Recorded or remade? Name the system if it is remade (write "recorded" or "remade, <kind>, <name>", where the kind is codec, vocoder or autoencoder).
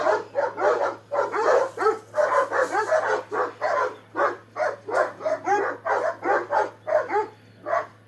recorded